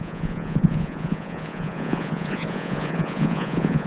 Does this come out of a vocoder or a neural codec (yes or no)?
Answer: yes